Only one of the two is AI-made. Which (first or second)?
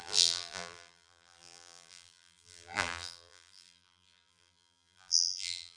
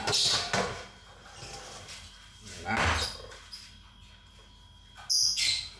first